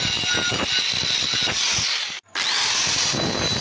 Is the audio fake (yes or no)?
no